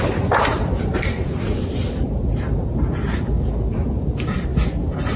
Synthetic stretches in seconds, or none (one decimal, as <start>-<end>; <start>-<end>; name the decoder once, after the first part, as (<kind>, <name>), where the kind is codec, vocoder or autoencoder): 0.0-4.5 (vocoder, BigVGAN v2)